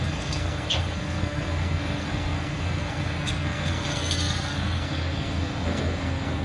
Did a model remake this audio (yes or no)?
yes